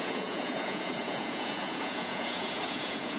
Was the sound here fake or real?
fake